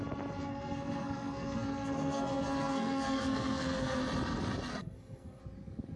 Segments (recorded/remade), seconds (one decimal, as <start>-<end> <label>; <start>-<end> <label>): 0.0-0.4 recorded; 0.4-4.0 remade; 4.0-4.7 recorded; 4.7-5.4 remade; 5.4-6.0 recorded